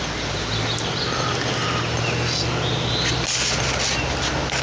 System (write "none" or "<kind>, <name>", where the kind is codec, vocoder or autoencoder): none